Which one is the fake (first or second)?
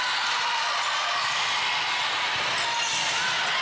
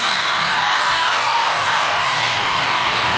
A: second